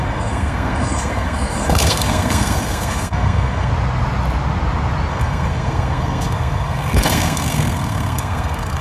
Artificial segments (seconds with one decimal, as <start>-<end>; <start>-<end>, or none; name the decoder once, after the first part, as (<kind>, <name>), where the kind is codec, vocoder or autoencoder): 0.0-3.7 (codec, SNAC); 5.1-8.8